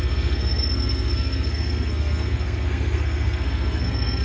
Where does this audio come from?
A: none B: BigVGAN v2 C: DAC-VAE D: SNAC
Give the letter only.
D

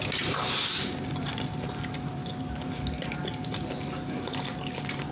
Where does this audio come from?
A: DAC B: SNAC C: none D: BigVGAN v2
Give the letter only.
C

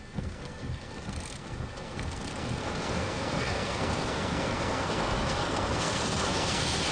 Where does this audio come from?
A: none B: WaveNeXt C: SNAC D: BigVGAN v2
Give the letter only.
C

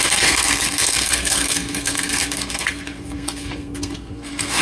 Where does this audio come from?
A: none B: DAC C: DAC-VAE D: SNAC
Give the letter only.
D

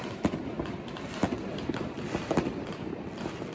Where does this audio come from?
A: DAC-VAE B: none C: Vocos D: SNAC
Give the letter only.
B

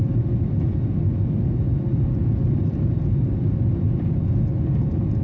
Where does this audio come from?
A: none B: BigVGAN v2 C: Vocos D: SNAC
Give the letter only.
A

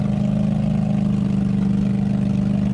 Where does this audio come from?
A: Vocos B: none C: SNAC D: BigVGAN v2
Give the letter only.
B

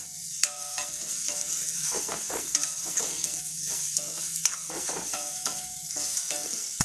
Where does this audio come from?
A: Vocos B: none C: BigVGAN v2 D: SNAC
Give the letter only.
D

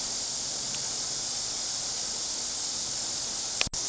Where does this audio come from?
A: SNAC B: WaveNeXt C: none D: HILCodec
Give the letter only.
C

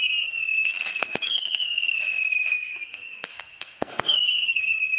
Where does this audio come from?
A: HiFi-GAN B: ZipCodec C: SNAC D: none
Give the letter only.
C